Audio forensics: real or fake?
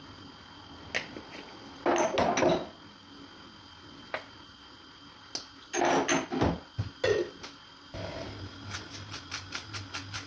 real